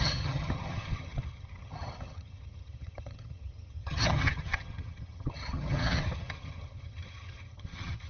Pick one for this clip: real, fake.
fake